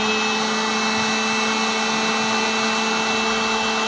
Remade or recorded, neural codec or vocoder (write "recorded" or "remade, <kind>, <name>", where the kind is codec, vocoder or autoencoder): recorded